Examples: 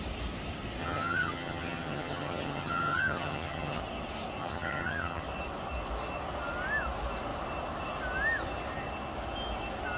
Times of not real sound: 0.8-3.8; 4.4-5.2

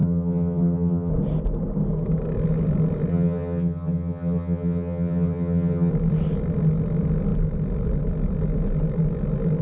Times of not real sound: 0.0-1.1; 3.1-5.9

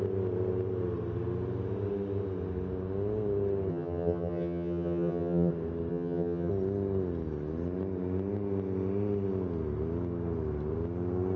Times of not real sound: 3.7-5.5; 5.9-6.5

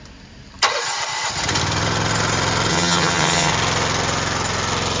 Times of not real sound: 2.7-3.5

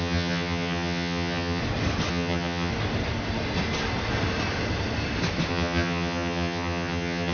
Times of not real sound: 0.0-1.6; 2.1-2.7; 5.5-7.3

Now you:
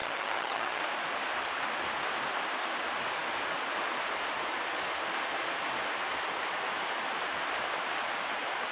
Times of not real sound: 0.0-0.8

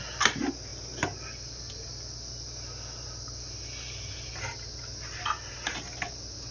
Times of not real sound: none

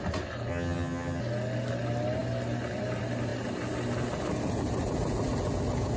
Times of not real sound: 0.5-1.2